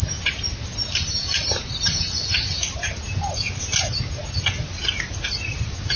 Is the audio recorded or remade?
recorded